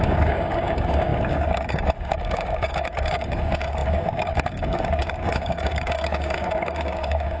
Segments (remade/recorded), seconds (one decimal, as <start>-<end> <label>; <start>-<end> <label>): 0.0-7.4 remade